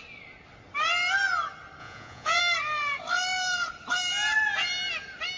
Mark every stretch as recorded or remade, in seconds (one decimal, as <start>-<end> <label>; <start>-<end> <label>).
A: 0.0-1.8 recorded; 1.8-2.4 remade; 2.4-5.4 recorded